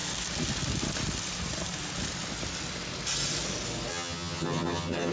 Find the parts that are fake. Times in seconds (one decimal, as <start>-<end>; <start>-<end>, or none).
3.9-5.1